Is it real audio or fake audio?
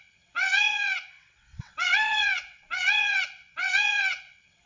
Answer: fake